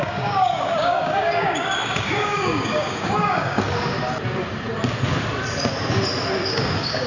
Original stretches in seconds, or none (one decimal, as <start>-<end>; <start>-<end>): 3.6-6.5

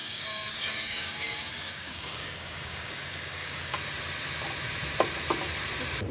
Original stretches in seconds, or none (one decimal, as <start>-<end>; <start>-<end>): 3.7-6.1

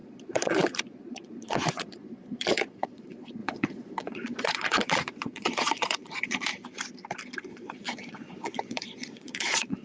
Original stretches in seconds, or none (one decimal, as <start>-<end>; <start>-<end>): 6.5-7.5

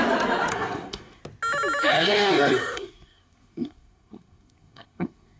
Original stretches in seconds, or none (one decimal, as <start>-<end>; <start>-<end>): 0.0-0.5; 1.2-1.9

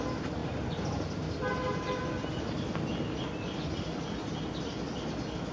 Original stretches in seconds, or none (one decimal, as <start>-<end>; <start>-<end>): 0.0-5.5